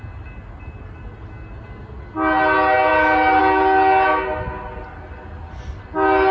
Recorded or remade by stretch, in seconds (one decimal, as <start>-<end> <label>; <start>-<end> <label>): 0.0-6.3 recorded